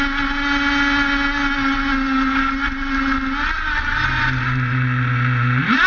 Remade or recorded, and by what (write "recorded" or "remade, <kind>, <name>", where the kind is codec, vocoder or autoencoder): recorded